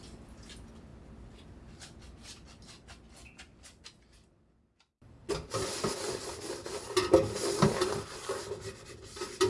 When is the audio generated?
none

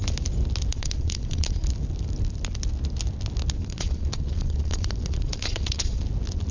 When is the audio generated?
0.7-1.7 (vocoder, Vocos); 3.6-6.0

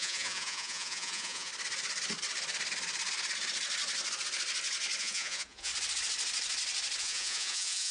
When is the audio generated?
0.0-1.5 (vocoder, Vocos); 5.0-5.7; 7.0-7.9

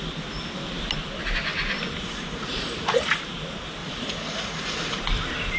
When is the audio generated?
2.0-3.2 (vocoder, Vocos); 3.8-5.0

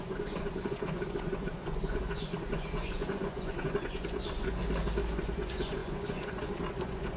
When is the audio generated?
0.0-4.6 (vocoder, Vocos); 5.1-7.2

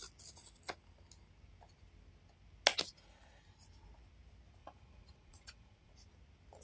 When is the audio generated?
4.6-5.9 (vocoder, Vocos)